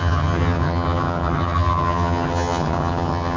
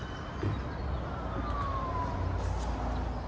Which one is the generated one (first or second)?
first